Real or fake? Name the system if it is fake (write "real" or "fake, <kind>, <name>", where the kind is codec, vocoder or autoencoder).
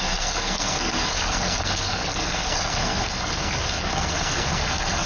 fake, codec, SNAC